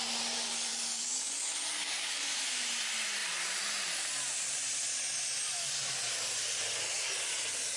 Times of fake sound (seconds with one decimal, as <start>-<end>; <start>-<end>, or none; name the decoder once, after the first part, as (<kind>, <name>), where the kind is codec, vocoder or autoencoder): 0.7-2.2 (codec, DAC)